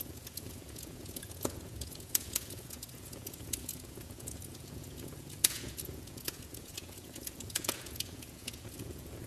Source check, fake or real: fake